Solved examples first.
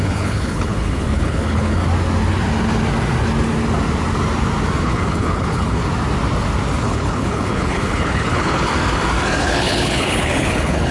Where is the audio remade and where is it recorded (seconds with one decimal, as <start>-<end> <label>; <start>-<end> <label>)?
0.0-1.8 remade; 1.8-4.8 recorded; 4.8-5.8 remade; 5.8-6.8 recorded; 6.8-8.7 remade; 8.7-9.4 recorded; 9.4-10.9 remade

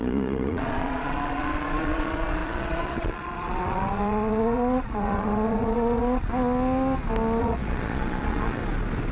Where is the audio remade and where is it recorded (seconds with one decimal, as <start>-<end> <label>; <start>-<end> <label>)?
0.0-6.3 remade; 6.3-7.4 recorded; 7.4-8.6 remade; 8.6-9.1 recorded

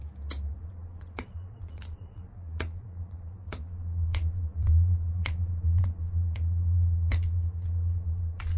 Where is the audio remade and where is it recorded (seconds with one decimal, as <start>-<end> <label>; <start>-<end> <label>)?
0.0-0.6 recorded; 0.6-8.6 remade

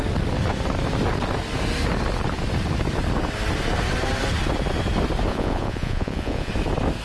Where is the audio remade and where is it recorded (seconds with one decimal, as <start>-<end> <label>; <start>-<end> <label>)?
0.0-5.3 recorded; 5.3-6.5 remade; 6.5-7.0 recorded

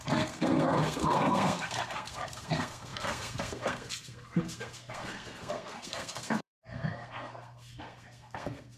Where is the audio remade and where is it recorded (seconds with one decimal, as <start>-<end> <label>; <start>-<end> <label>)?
0.0-8.8 remade

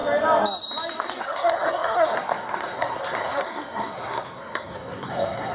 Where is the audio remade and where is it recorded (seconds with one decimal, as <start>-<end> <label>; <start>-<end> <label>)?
0.0-1.2 recorded; 1.2-5.5 remade